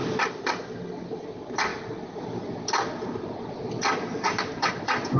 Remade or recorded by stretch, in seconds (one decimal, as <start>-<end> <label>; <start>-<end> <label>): 0.0-5.2 recorded